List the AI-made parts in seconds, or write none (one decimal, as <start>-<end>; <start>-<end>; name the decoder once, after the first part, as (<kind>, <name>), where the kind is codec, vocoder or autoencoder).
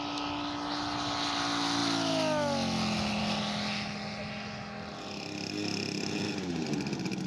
none